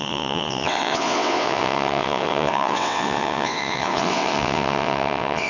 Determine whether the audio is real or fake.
fake